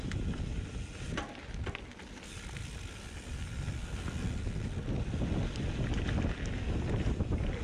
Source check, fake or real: real